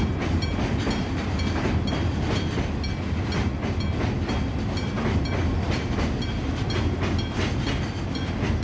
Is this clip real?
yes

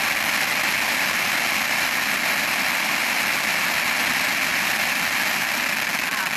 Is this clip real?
yes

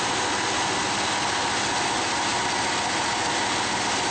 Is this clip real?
yes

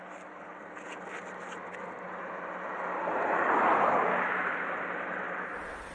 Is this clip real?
yes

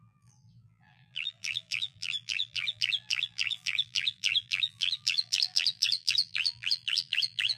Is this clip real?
no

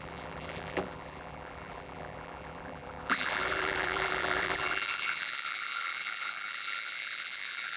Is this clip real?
no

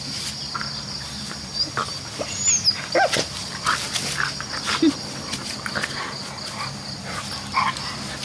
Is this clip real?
yes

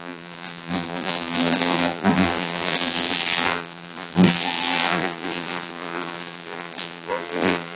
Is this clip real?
no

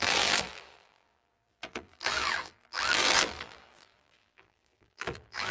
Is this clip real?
no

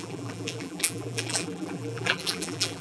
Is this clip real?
no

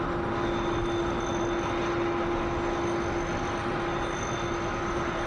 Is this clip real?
yes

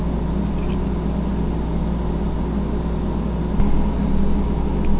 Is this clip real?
yes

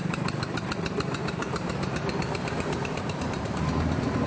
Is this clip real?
no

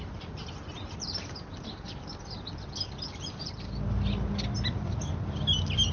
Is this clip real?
yes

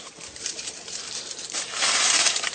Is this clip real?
no